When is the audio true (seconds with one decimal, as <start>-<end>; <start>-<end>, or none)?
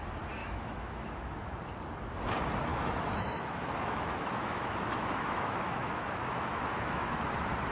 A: 0.0-0.4; 1.6-2.7; 7.3-7.7